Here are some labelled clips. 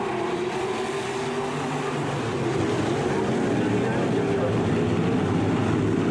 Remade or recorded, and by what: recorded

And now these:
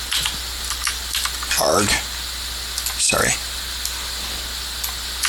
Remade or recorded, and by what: recorded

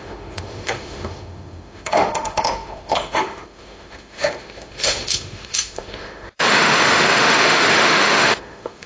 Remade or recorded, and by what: remade, autoencoder, DAC-VAE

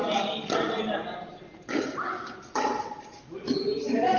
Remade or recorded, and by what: remade, vocoder, BigVGAN v2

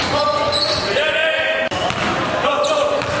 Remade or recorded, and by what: recorded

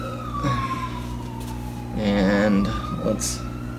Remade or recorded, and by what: recorded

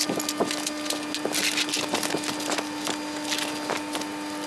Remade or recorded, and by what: recorded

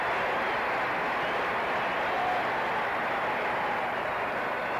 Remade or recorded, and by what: recorded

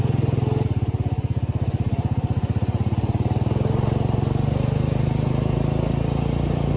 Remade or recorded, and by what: recorded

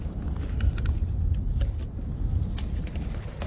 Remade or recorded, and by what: remade, vocoder, BigVGAN v2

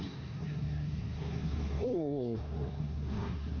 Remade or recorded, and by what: remade, codec, SNAC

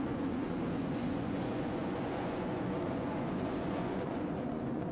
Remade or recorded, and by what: remade, vocoder, Vocos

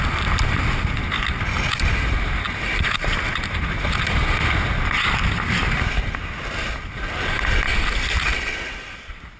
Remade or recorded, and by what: recorded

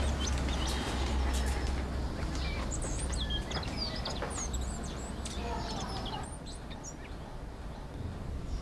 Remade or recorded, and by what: recorded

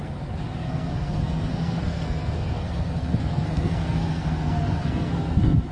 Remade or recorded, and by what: remade, codec, SNAC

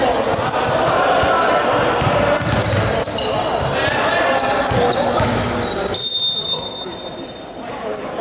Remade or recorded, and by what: recorded